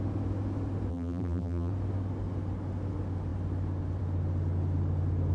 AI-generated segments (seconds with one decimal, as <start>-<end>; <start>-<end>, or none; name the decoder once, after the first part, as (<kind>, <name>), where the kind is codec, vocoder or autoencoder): 0.9-1.7 (vocoder, BigVGAN v2)